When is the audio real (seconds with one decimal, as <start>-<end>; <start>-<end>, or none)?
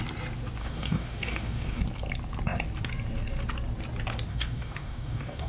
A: 0.0-0.6; 1.8-4.3